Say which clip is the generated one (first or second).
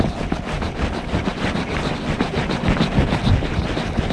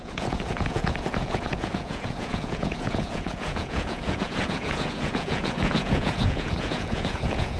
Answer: second